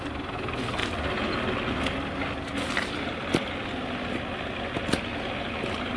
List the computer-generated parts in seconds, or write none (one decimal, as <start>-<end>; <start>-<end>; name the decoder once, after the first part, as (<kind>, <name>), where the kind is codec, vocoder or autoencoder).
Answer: none